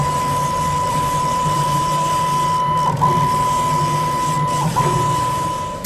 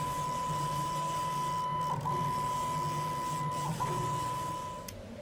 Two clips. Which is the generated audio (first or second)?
first